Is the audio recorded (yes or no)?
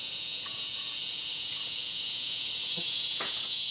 no